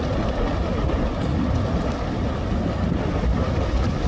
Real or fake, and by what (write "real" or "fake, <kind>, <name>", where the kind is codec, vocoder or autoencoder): real